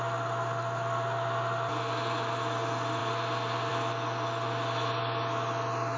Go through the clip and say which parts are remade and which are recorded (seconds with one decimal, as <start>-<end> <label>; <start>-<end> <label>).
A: 0.0-6.0 recorded